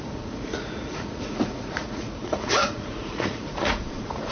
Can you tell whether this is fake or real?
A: fake